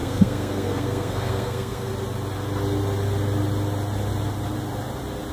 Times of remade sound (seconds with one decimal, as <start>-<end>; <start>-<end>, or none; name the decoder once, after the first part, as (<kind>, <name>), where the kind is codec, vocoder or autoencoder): 0.0-1.9 (codec, SNAC)